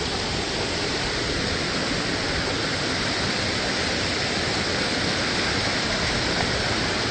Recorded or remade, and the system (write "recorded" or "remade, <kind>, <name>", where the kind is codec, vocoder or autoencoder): recorded